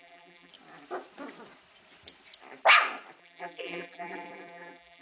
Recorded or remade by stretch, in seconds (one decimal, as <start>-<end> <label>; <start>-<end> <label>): 0.0-0.5 remade; 0.5-3.2 recorded; 3.2-5.0 remade